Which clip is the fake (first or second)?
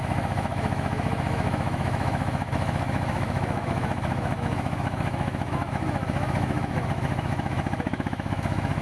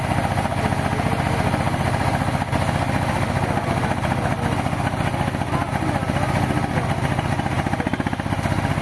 first